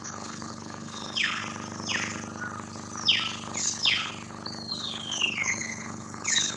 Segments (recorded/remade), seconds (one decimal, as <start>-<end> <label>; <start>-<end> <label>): 0.0-1.4 remade; 1.4-3.6 recorded; 3.6-4.1 remade; 4.1-4.7 recorded; 4.7-6.6 remade